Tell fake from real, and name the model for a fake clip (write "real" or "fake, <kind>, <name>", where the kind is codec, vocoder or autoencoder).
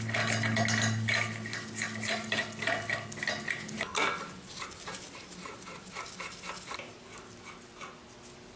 real